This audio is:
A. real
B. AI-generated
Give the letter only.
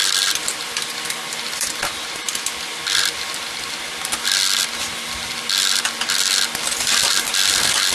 A